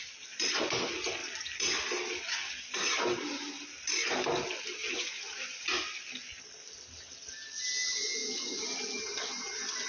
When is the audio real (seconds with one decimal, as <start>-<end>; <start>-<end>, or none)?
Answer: 0.0-9.9